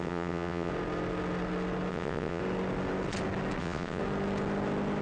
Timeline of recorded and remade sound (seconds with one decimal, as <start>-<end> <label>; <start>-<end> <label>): 0.0-0.7 remade; 0.7-1.9 recorded; 1.9-2.4 remade; 2.4-3.6 recorded; 3.6-4.0 remade; 4.0-5.0 recorded

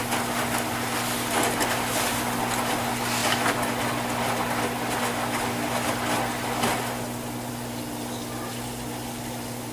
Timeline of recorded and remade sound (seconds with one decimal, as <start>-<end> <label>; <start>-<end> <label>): 0.0-9.7 recorded

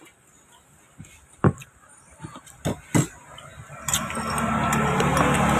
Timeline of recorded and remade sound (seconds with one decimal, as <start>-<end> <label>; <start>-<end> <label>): 0.0-5.6 recorded

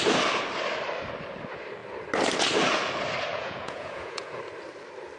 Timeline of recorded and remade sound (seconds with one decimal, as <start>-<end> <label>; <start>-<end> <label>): 0.0-3.3 recorded; 3.3-4.4 remade; 4.4-5.2 recorded

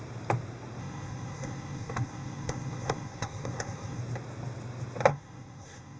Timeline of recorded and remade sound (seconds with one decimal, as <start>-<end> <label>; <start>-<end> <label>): 0.0-0.8 recorded; 0.8-4.0 remade; 4.0-5.1 recorded; 5.1-6.0 remade

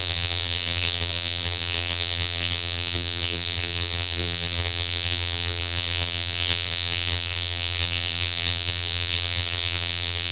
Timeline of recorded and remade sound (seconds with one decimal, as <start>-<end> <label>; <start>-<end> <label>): 0.0-10.3 remade

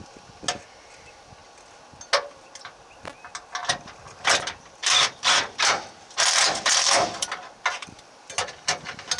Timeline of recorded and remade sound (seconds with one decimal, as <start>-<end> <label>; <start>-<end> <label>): 0.0-3.6 recorded; 3.6-7.4 remade; 7.4-9.2 recorded